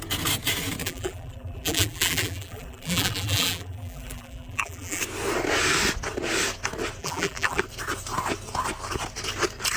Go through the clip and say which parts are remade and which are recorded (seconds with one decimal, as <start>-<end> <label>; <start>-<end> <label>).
0.0-0.8 recorded; 0.8-5.0 remade; 5.0-7.0 recorded; 7.0-7.6 remade; 7.6-9.8 recorded